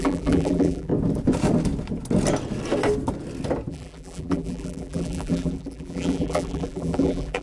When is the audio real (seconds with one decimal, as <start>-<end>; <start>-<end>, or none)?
0.9-3.7